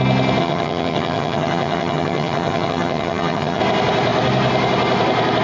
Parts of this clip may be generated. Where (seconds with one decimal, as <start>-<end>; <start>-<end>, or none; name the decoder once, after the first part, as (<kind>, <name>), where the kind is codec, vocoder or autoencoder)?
0.4-3.6 (vocoder, HiFi-GAN)